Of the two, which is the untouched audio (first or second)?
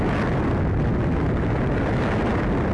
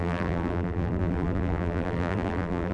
first